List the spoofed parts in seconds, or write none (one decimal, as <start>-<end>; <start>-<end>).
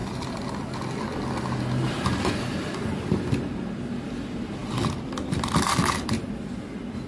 none